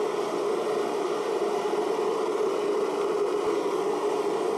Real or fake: real